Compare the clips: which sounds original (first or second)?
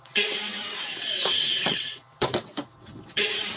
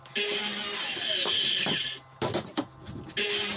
second